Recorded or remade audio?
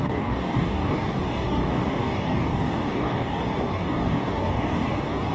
remade